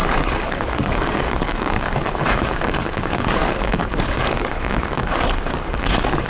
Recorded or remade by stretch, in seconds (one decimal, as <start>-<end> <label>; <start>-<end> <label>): 0.0-6.3 remade